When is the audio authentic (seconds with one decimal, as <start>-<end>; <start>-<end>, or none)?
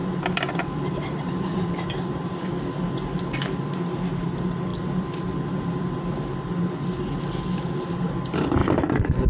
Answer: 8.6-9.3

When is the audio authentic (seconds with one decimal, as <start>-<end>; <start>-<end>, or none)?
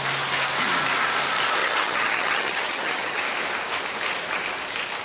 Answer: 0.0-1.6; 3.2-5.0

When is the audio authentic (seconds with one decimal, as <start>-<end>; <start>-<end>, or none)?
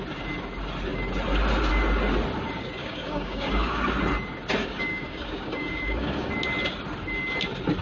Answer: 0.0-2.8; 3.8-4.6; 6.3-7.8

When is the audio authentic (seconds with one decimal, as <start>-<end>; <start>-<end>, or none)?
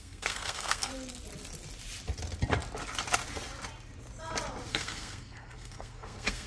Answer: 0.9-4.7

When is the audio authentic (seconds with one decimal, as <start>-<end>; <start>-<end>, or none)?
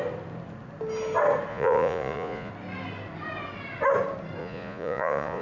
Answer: 0.0-1.5; 2.5-4.4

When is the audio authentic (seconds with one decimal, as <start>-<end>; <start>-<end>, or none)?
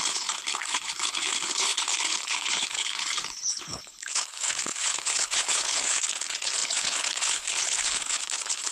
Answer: none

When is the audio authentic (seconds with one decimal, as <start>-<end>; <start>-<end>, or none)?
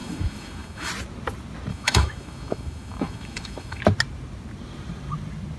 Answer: 0.9-1.7; 3.8-5.6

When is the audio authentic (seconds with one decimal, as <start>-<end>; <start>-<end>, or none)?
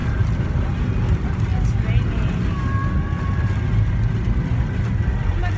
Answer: 0.0-5.6